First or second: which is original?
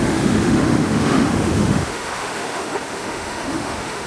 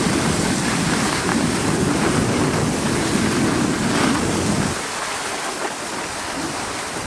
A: second